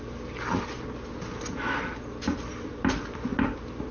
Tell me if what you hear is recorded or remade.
recorded